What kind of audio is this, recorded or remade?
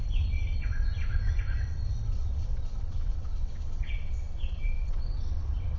remade